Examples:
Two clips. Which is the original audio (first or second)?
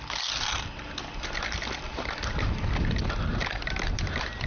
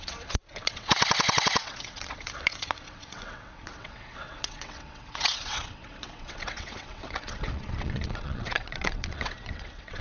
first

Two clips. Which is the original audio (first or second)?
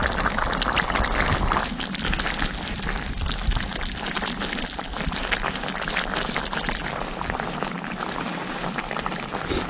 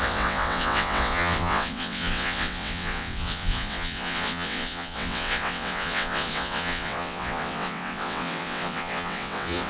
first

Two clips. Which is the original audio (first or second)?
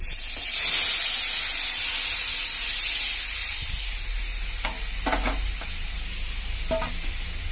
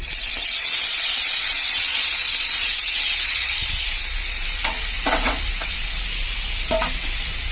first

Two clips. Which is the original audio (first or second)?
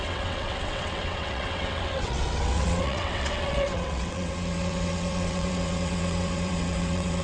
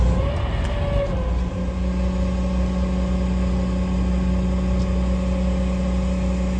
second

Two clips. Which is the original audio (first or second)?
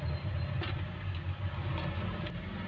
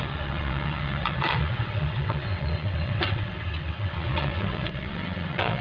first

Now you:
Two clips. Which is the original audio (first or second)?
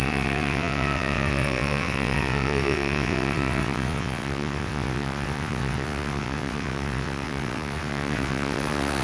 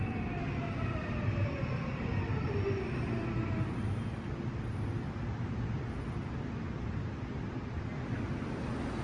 second